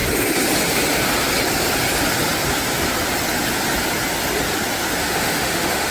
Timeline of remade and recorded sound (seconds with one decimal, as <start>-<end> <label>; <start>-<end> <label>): 0.0-5.0 recorded; 5.0-5.9 remade